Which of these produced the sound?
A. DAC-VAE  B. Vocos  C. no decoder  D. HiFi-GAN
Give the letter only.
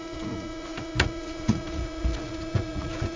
B